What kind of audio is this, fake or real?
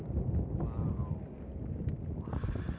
real